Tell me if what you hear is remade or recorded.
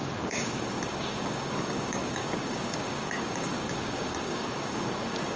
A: remade